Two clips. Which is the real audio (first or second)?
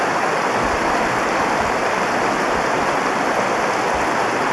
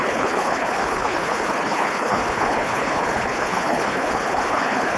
first